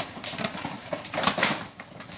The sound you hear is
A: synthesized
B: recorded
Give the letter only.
A